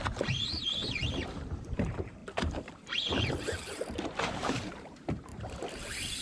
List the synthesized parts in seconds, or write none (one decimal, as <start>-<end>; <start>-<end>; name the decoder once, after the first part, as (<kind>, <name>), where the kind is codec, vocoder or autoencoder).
0.0-2.2 (vocoder, BigVGAN v2); 2.7-6.2